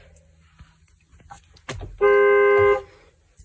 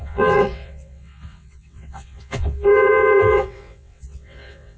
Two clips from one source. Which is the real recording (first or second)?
first